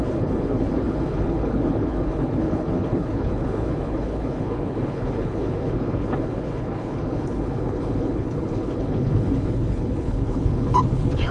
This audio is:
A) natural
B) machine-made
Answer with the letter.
B